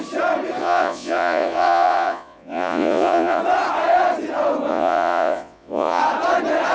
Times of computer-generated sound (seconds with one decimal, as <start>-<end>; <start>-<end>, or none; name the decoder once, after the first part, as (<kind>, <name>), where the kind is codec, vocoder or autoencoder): 0.6-3.4 (vocoder, Vocos); 4.7-6.0